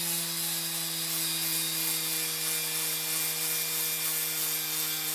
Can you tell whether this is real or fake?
real